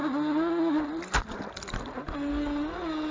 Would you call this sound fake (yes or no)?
no